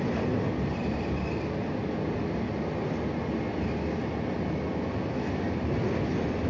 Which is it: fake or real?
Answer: real